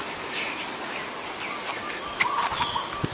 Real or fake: real